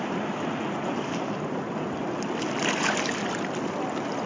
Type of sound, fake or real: real